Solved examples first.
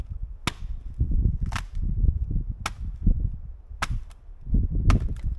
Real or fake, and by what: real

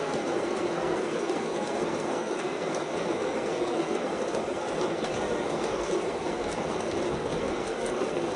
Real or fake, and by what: fake, codec, SNAC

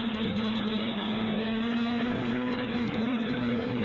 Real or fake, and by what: fake, codec, SNAC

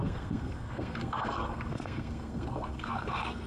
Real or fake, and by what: fake, codec, SNAC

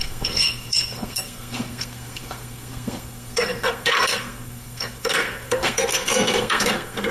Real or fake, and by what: fake, codec, SNAC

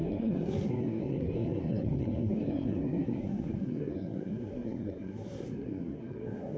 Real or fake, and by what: fake, codec, SNAC